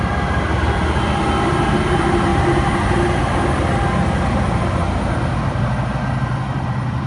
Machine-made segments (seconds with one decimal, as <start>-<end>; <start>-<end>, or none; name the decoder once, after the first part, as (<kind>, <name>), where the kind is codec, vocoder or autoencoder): none